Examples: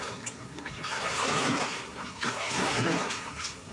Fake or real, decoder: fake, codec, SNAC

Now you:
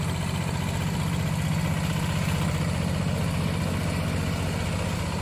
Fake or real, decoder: real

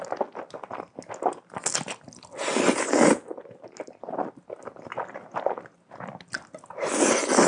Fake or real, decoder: real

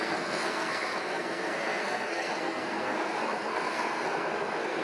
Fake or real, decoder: fake, codec, SNAC